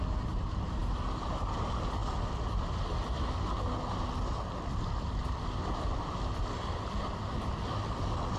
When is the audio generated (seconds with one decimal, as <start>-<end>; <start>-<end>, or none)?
none